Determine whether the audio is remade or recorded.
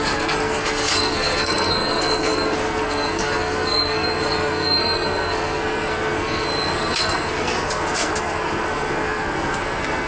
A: remade